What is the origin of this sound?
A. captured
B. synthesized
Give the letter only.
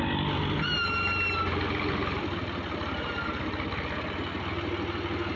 A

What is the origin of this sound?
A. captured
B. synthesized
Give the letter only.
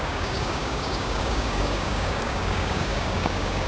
B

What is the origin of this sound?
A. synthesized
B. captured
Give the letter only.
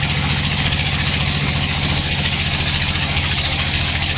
A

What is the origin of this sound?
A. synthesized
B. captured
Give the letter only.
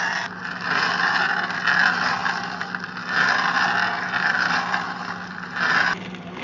B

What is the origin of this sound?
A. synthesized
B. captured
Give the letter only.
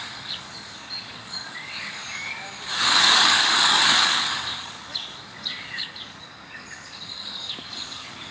A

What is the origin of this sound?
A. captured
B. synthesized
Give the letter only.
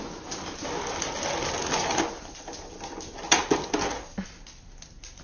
A